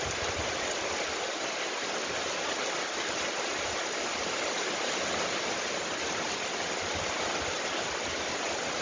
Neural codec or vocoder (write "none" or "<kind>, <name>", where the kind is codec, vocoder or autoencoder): none